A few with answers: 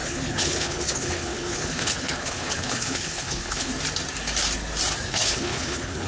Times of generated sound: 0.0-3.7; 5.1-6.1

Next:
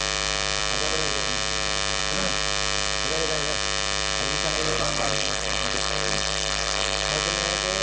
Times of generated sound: 4.6-7.1

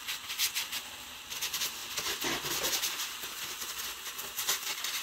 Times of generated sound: 0.0-1.8; 2.7-5.0

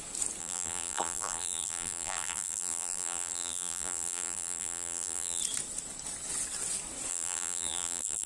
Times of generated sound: 0.4-5.4; 7.1-8.3